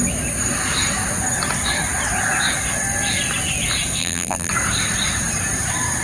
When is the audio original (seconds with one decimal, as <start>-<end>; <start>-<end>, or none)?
0.0-4.0; 4.5-6.0